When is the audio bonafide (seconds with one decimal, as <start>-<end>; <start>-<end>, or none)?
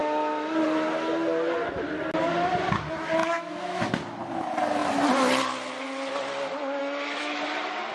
0.0-3.2; 3.8-6.8; 7.4-7.9